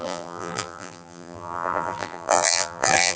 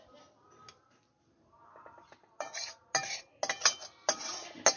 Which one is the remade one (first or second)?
first